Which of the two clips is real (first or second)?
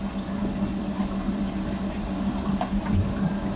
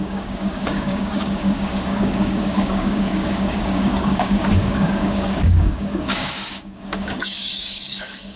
first